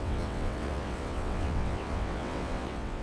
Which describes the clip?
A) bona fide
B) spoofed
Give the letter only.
B